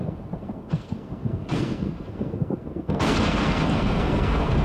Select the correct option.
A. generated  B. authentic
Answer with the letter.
A